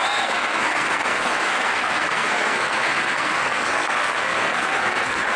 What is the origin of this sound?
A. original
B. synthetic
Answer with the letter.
B